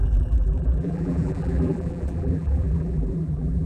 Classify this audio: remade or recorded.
remade